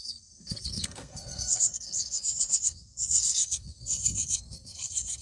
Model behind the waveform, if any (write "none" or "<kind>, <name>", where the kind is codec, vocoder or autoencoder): codec, SNAC